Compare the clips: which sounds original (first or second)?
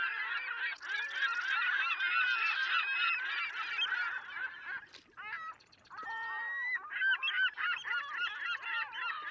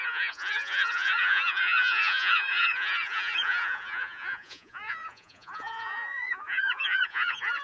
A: first